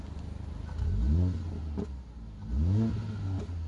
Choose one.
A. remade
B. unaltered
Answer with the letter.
B